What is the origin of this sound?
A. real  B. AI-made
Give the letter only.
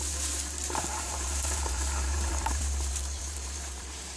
B